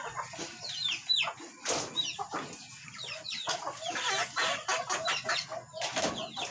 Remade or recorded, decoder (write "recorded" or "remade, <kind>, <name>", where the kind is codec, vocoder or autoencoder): recorded